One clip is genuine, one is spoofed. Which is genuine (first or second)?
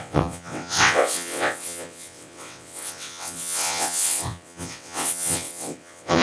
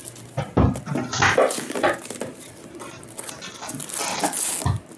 second